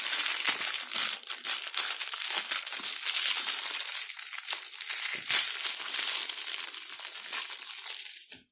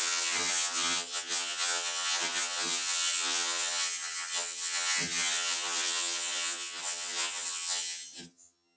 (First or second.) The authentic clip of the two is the first